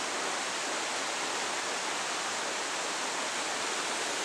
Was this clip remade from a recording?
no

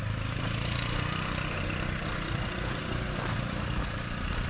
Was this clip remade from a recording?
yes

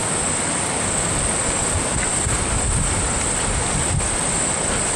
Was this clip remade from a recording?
no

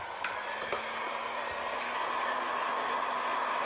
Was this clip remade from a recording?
no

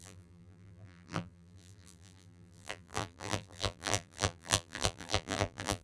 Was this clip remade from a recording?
yes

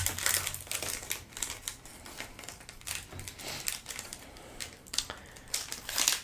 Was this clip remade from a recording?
no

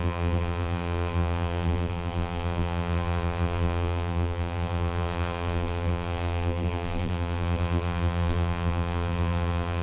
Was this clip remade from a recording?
yes